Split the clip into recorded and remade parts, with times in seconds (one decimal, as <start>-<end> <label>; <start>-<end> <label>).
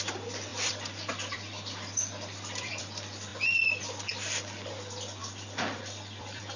0.0-0.5 recorded; 0.5-2.8 remade; 2.8-3.3 recorded; 3.3-3.8 remade; 3.8-5.2 recorded; 5.2-6.6 remade